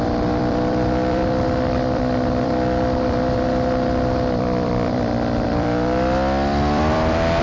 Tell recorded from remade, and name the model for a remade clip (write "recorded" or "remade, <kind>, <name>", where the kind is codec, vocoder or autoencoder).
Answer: remade, vocoder, BigVGAN v2